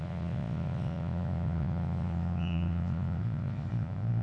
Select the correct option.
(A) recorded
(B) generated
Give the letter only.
B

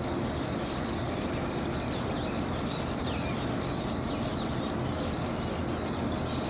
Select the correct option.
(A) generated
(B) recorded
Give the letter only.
B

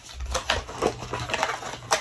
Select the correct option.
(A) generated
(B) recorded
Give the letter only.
B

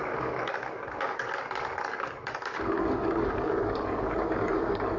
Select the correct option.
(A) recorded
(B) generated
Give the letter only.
B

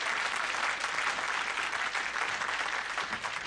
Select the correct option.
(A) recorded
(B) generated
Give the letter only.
A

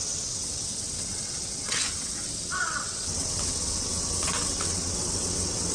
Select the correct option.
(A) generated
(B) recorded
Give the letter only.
A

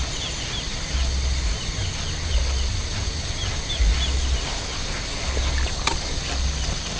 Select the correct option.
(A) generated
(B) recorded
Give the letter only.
B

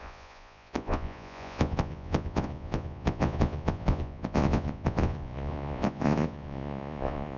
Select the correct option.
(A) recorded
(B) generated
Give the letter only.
B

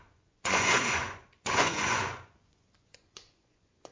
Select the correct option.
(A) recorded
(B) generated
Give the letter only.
B